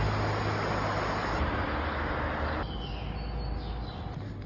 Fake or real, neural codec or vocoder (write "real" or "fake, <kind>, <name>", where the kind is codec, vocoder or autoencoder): real